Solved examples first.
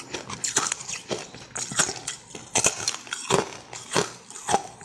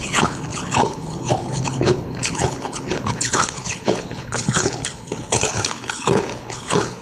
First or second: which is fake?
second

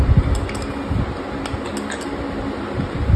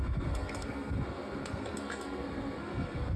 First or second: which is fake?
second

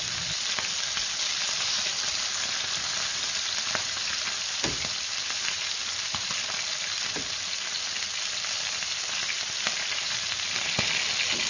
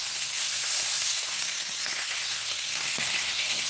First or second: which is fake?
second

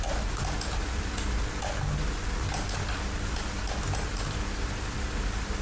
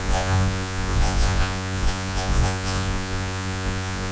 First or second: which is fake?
second